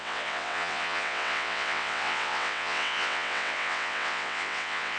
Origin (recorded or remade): remade